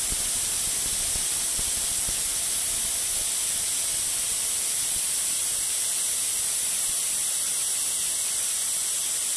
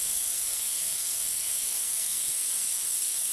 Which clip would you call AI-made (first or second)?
second